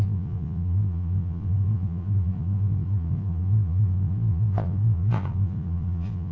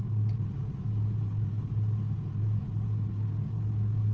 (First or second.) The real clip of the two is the second